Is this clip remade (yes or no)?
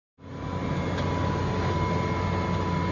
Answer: no